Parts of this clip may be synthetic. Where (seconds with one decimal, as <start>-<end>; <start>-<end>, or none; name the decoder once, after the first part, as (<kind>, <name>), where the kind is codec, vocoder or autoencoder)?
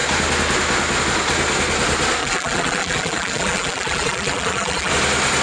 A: 2.2-4.9 (vocoder, BigVGAN v2)